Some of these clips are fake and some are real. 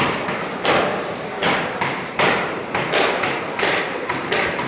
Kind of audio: fake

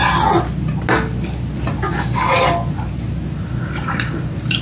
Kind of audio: real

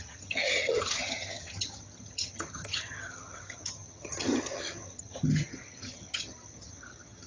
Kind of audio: fake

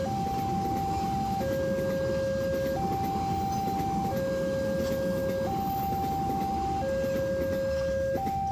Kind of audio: real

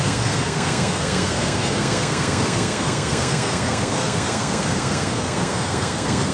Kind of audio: fake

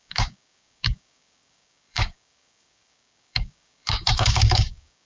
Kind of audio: fake